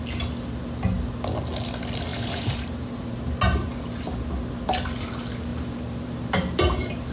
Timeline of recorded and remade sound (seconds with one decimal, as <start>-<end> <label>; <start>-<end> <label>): 0.0-2.1 recorded; 2.1-3.2 remade; 3.2-5.5 recorded; 5.5-7.1 remade